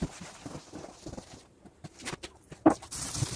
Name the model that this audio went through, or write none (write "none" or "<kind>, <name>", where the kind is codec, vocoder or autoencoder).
vocoder, BigVGAN v2